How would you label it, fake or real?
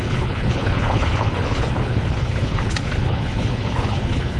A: fake